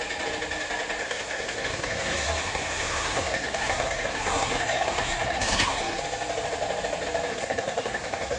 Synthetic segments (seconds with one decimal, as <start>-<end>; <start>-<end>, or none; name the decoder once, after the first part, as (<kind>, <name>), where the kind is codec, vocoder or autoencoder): 1.0-6.0 (codec, SNAC); 7.3-8.4